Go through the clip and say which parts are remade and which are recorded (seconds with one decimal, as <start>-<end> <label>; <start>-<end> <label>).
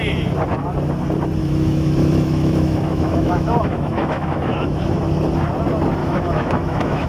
0.0-1.4 recorded; 1.4-5.0 remade; 5.0-6.0 recorded; 6.0-7.1 remade